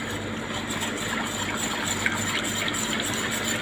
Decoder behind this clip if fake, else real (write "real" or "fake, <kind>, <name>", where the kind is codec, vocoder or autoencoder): real